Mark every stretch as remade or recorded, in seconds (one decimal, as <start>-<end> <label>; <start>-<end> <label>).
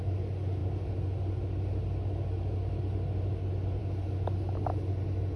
0.0-5.4 recorded